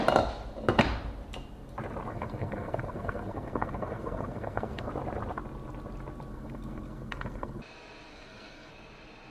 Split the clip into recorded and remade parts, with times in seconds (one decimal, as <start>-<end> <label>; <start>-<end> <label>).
0.0-2.1 recorded; 2.1-4.9 remade; 4.9-6.3 recorded; 6.3-7.6 remade; 7.6-8.1 recorded; 8.1-8.7 remade; 8.7-9.3 recorded